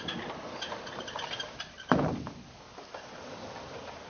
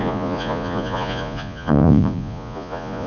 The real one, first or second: first